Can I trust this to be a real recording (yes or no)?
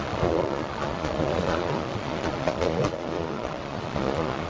no